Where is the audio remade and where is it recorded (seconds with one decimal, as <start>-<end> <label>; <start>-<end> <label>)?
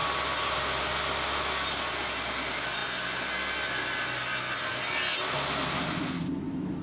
0.0-2.8 remade; 2.8-6.1 recorded; 6.1-6.8 remade